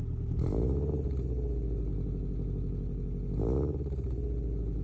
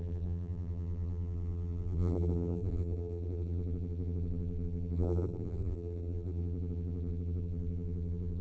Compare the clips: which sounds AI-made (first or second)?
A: second